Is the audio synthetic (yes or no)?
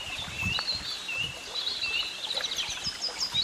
no